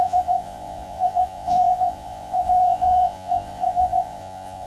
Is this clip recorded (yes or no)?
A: no